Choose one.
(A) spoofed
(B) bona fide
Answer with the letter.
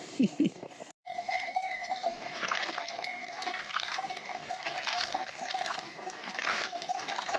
A